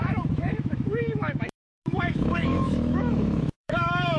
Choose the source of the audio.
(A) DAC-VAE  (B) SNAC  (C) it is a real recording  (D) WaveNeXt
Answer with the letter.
A